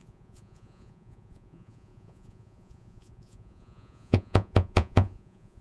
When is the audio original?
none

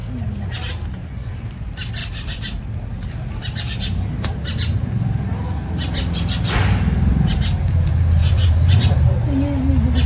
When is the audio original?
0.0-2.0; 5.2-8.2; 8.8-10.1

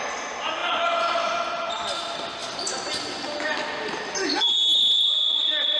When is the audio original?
0.0-5.8